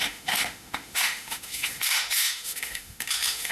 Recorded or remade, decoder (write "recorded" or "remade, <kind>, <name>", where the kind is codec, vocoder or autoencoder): remade, autoencoder, DAC-VAE